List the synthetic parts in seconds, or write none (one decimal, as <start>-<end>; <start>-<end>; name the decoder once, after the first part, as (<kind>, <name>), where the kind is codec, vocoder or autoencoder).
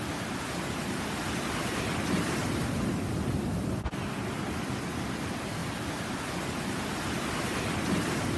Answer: none